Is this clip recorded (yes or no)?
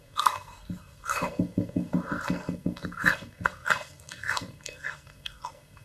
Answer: no